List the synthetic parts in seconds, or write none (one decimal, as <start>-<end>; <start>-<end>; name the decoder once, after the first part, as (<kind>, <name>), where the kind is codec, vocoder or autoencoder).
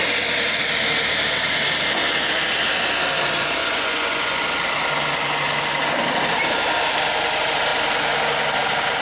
3.6-4.4 (vocoder, Vocos)